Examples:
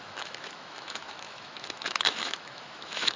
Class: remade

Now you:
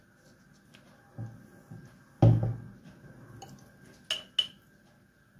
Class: recorded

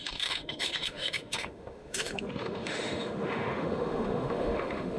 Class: remade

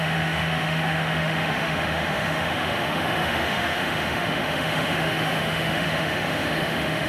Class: remade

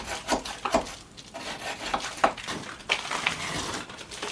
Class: recorded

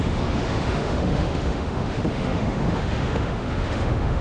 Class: remade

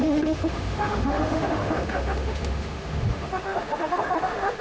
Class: remade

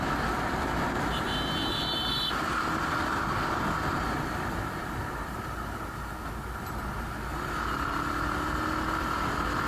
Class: recorded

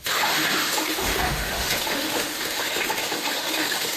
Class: remade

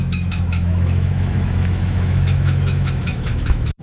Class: remade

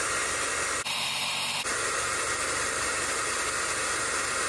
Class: recorded